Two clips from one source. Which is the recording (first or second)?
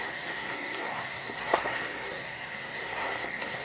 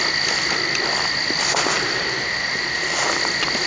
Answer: second